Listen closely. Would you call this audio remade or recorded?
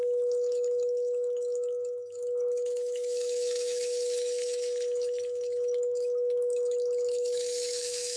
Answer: remade